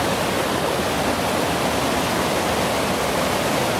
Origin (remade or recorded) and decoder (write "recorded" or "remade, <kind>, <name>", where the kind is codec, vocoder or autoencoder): recorded